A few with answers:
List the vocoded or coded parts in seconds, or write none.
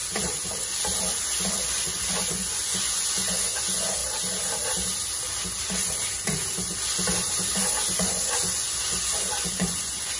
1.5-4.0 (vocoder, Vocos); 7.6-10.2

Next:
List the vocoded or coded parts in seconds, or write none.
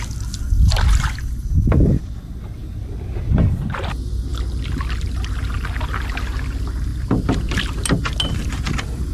none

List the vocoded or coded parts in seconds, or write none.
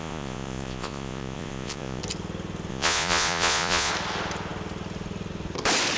0.0-2.0 (vocoder, Vocos); 2.7-3.9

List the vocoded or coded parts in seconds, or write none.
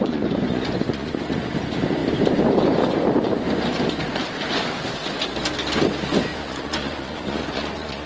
0.0-1.1 (vocoder, Vocos); 6.3-8.1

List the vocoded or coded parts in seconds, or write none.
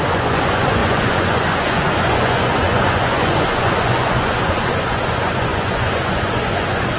0.0-7.0 (vocoder, Vocos)